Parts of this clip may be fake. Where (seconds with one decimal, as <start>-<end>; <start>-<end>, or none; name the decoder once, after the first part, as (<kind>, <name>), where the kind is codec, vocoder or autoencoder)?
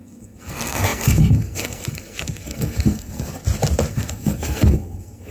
0.0-3.4 (codec, SNAC); 3.9-5.3